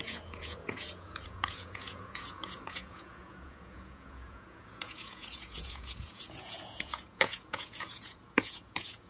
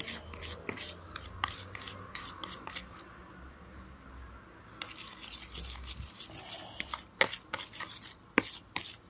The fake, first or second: first